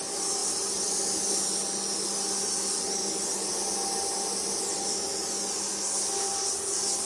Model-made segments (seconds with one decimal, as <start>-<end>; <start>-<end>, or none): none